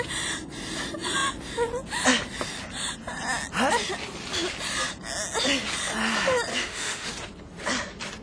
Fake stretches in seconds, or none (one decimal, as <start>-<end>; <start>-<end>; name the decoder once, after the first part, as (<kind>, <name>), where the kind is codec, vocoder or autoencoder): 6.5-7.1 (autoencoder, DAC-VAE)